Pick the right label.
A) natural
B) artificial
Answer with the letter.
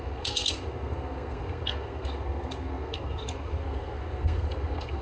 B